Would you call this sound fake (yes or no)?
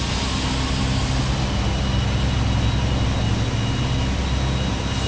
no